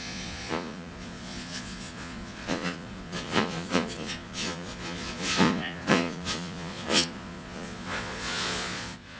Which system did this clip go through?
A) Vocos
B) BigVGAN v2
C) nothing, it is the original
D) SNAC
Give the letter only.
A